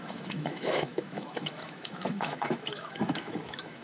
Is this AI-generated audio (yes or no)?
yes